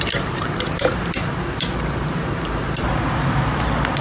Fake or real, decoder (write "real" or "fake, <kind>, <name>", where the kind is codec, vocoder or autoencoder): fake, vocoder, BigVGAN v2